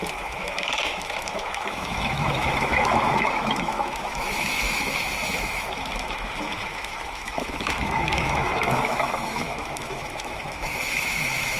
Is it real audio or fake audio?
fake